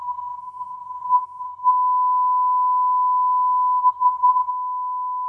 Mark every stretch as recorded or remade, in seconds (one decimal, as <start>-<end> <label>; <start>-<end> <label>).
0.0-1.7 remade; 1.7-3.8 recorded; 3.8-4.5 remade; 4.5-5.3 recorded

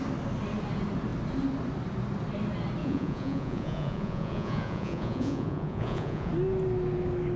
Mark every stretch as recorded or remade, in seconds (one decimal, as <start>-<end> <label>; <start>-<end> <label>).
0.0-2.8 recorded; 2.8-6.3 remade; 6.3-7.4 recorded

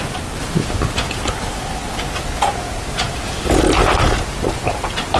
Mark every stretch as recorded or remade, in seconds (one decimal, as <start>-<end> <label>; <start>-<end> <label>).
0.0-5.2 recorded

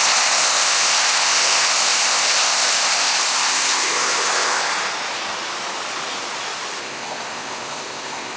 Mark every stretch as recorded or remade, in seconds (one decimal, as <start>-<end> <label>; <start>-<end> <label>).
0.0-4.7 remade; 4.7-6.8 recorded; 6.8-8.4 remade

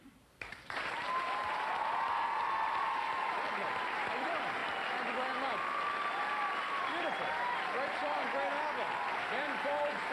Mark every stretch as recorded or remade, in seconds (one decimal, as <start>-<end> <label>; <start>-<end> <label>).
0.0-4.6 remade; 4.6-9.1 recorded; 9.1-10.1 remade